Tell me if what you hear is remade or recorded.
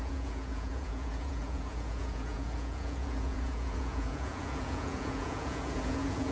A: remade